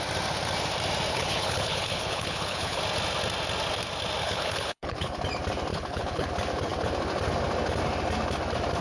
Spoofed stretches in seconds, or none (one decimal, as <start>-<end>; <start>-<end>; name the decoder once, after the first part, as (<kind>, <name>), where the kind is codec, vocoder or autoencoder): 1.1-2.8 (codec, HILCodec); 4.2-5.2; 5.7-6.3